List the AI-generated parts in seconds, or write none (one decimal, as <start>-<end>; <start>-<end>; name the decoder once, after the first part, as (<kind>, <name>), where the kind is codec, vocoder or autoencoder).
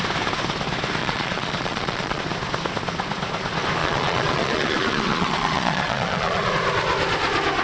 1.0-2.2 (vocoder, Vocos); 3.8-6.5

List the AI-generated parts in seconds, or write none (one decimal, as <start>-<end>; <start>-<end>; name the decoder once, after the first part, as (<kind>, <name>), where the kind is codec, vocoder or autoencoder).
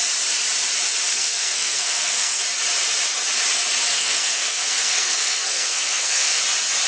1.1-2.4 (codec, SNAC); 3.9-6.4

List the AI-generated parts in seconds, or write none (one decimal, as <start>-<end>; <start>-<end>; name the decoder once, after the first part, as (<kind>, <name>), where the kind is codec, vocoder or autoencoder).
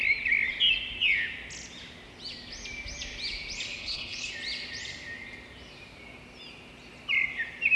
3.8-4.3 (codec, HILCodec)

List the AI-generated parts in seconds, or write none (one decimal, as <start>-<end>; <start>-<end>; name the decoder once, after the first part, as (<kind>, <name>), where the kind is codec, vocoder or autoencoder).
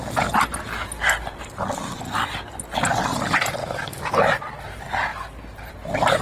3.6-4.1 (autoencoder, DAC-VAE)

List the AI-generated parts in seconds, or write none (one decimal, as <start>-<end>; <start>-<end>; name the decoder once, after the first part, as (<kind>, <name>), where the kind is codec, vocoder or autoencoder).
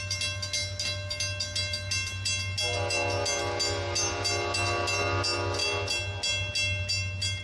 none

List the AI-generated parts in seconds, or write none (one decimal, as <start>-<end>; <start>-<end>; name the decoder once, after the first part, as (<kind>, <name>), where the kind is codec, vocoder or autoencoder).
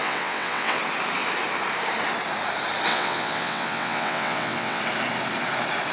0.0-0.8 (vocoder, WaveNeXt); 2.9-4.8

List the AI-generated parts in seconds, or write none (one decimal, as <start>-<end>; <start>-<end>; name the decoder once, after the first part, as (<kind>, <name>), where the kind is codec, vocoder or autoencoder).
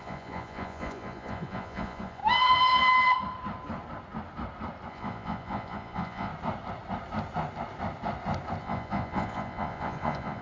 0.0-2.2 (vocoder, Vocos); 4.9-6.3; 8.6-10.4